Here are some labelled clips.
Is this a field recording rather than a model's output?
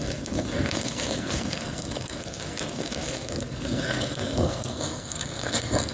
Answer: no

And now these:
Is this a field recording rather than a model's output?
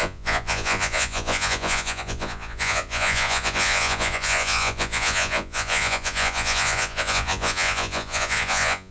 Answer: no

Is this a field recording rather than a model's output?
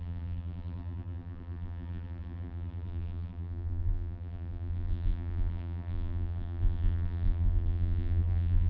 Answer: no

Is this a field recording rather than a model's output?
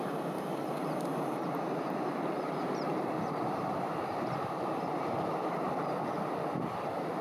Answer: no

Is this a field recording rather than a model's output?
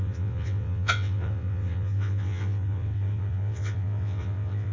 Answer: no